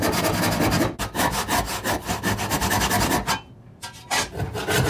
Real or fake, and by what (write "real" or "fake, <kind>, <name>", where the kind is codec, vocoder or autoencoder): real